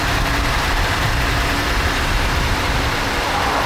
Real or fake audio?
fake